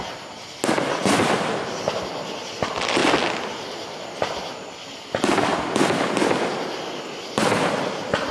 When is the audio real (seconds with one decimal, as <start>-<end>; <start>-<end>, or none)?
0.0-8.3